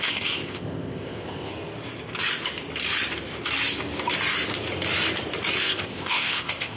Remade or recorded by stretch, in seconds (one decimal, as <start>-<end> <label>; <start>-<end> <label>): 0.0-1.5 remade; 1.5-5.6 recorded; 5.6-6.8 remade